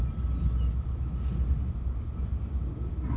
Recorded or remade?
recorded